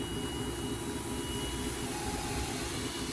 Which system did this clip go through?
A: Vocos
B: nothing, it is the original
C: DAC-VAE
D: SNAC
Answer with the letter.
B